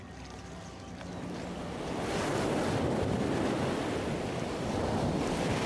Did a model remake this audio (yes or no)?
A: no